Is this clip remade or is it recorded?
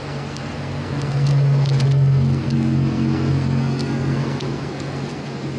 remade